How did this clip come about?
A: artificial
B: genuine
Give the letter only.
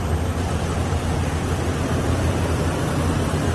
B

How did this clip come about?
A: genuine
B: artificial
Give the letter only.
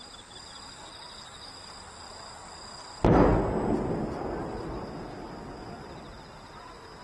A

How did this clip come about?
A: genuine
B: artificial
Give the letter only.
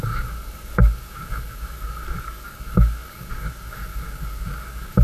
B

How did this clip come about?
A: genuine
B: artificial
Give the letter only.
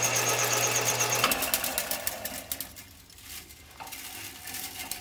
A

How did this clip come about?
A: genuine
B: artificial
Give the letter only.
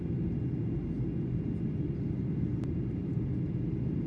A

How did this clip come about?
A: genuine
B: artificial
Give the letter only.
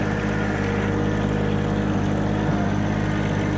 A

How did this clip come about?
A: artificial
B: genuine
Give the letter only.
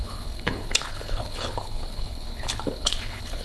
A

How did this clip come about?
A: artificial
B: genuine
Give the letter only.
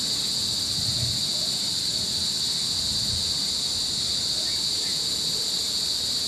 B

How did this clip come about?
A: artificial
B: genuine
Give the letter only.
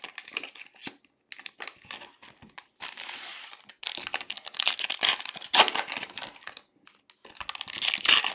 B